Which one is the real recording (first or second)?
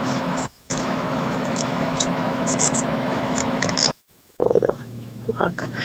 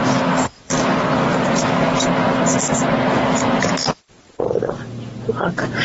second